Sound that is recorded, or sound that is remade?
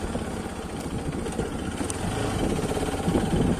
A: recorded